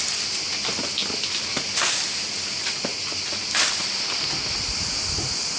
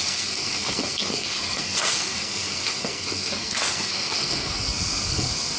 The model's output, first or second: second